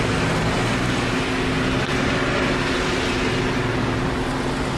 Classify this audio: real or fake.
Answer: real